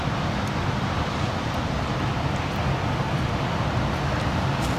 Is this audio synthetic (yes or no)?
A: no